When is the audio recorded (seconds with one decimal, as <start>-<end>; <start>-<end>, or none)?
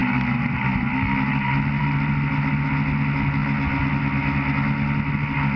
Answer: 0.0-5.6